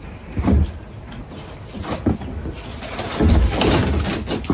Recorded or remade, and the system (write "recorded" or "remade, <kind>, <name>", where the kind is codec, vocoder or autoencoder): recorded